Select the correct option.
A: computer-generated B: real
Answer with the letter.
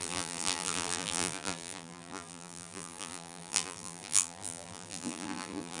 A